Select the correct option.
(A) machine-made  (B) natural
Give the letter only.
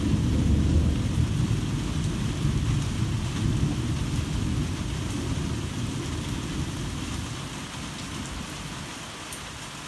B